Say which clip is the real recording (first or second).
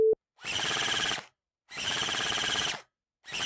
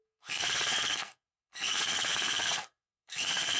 first